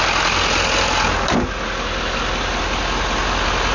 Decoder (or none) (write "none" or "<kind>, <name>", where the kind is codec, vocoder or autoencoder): none